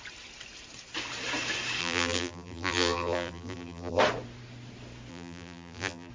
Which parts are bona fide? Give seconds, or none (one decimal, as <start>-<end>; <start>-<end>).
0.0-1.8; 4.0-5.1